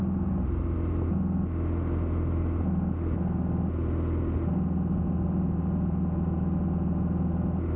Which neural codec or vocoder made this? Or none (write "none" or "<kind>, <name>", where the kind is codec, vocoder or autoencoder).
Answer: none